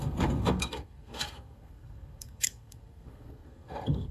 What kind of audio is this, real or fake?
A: fake